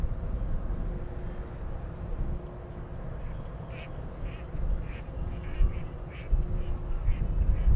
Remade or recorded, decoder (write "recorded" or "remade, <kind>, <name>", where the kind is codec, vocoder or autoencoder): recorded